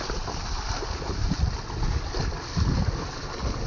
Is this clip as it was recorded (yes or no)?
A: yes